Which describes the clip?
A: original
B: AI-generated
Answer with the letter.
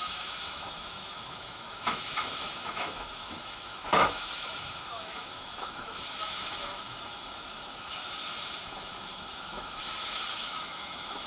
B